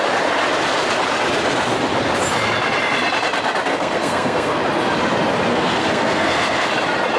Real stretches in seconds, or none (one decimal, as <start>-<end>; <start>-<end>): 0.0-3.7; 4.6-5.5; 6.7-7.2